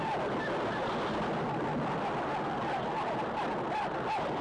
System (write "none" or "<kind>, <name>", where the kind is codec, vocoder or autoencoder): none